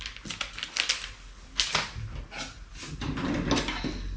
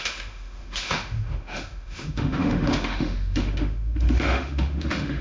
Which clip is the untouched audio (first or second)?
first